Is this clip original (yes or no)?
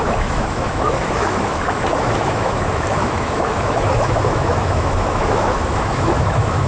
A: no